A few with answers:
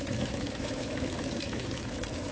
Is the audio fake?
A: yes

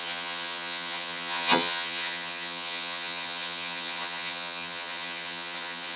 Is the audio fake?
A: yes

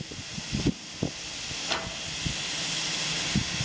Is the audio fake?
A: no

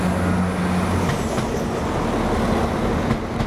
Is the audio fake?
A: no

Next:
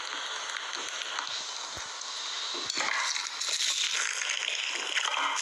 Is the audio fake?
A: no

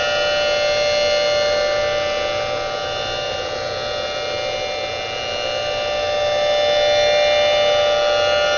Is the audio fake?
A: no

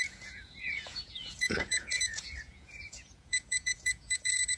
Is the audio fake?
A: yes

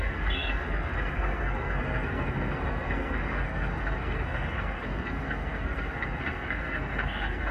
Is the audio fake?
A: yes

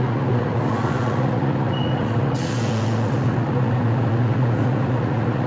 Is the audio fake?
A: yes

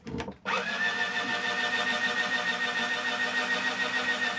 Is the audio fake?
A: no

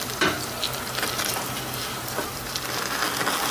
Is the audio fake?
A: no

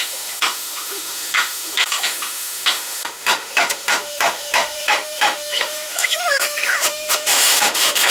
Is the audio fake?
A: yes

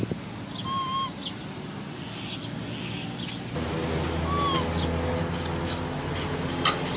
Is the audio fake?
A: no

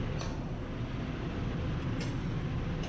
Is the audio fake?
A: no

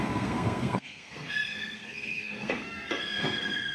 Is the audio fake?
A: yes